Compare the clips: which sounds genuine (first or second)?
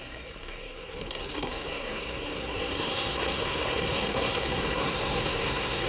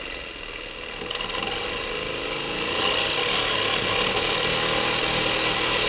second